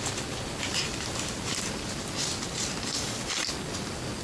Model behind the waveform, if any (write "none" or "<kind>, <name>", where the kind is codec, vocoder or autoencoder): none